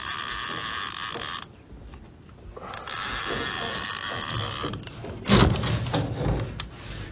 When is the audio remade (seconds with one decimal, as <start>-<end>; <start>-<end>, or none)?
none